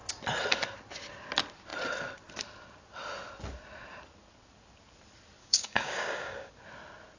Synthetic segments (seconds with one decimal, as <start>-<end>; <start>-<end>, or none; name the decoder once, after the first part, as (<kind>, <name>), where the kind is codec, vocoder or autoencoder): 5.4-6.5 (codec, DAC)